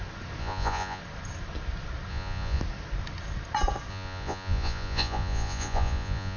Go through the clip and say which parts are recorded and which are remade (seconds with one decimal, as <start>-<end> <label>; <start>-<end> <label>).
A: 0.0-0.4 recorded; 0.4-1.0 remade; 1.0-2.1 recorded; 2.1-2.6 remade; 2.6-3.9 recorded; 3.9-6.4 remade